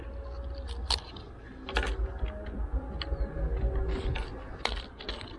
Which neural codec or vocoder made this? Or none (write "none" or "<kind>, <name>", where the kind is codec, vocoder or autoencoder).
none